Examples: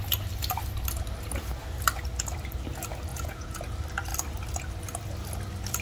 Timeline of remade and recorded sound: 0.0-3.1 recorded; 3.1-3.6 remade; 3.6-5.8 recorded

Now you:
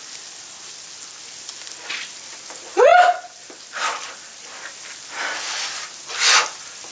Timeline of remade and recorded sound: 0.0-6.9 recorded

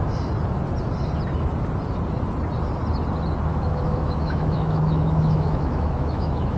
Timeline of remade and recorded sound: 0.0-3.5 recorded; 3.5-6.6 remade

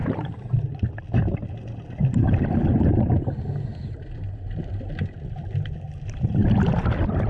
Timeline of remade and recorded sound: 0.0-7.3 recorded

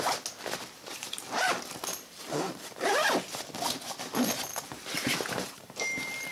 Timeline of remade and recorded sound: 0.0-0.9 recorded; 0.9-2.9 remade; 2.9-4.5 recorded; 4.5-6.3 remade

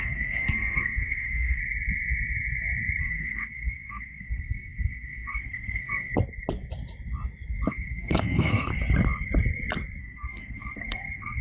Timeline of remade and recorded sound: 0.0-1.6 remade; 1.6-3.0 recorded; 3.0-6.1 remade; 6.1-7.7 recorded; 7.7-8.7 remade; 8.7-10.0 recorded; 10.0-11.4 remade

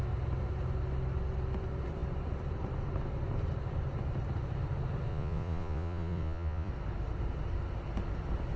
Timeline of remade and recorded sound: 0.0-5.1 recorded; 5.1-6.7 remade; 6.7-8.6 recorded

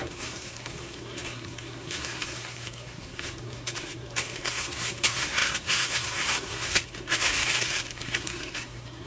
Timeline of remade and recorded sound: 0.0-9.1 remade